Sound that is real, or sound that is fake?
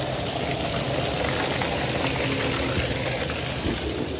real